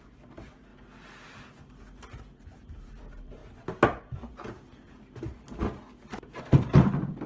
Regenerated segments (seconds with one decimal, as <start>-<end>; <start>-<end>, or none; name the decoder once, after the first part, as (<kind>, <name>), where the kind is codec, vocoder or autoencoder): 0.0-0.7 (vocoder, BigVGAN v2); 1.3-3.4; 6.4-7.3

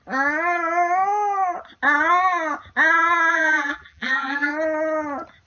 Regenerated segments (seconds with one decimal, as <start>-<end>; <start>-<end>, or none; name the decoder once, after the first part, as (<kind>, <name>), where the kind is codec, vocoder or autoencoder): 3.3-4.5 (vocoder, BigVGAN v2)

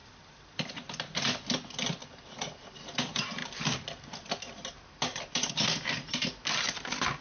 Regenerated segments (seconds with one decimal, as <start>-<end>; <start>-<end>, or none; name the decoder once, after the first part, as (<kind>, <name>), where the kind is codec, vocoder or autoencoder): 0.0-0.9 (vocoder, BigVGAN v2); 2.0-3.0

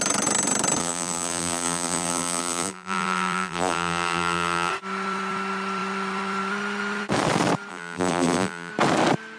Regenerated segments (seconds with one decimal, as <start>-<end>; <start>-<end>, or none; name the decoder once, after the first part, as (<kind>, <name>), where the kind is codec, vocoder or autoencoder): 0.8-4.7 (vocoder, BigVGAN v2); 7.7-8.7

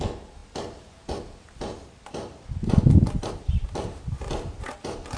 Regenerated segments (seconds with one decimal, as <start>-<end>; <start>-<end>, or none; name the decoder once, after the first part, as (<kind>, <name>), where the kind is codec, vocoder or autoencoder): none

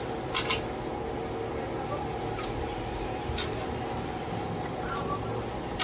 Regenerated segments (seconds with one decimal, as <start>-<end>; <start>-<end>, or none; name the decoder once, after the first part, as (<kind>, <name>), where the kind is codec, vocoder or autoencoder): none

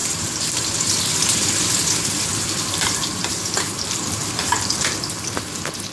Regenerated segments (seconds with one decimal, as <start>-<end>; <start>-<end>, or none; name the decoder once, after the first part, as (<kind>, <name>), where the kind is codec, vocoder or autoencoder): 0.0-0.6 (vocoder, BigVGAN v2); 2.3-5.9